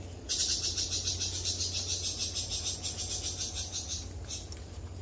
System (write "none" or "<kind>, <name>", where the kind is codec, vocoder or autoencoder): none